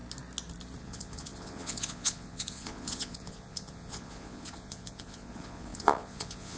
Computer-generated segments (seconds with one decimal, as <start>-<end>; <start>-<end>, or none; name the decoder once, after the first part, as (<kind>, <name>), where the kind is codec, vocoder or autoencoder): 0.8-6.6 (vocoder, Vocos)